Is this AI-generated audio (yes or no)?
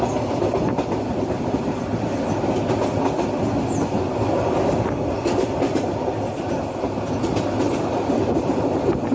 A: no